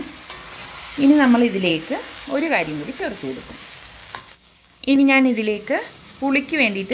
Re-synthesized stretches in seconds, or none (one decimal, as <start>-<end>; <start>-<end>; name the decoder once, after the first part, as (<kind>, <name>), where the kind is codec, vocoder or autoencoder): 1.7-3.5 (codec, DAC); 4.0-6.2